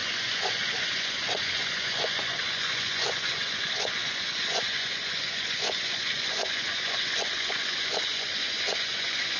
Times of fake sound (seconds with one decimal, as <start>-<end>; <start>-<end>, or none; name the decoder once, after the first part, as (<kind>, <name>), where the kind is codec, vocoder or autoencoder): 0.0-9.4 (vocoder, Vocos)